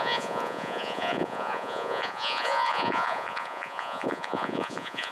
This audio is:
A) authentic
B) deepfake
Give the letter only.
B